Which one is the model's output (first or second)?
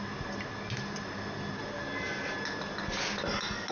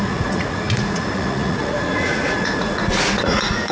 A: second